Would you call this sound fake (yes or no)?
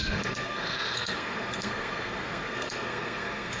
yes